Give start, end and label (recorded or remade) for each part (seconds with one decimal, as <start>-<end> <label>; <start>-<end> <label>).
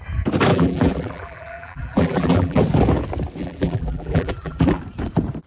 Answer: 0.0-0.5 recorded; 0.5-2.6 remade; 2.6-3.4 recorded; 3.4-4.8 remade; 4.8-5.5 recorded